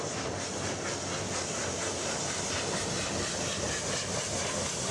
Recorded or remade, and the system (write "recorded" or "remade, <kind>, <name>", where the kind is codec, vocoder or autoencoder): recorded